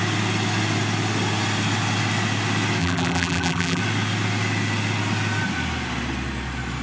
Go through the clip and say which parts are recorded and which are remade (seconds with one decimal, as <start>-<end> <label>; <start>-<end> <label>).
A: 0.0-2.8 recorded; 2.8-3.8 remade; 3.8-6.8 recorded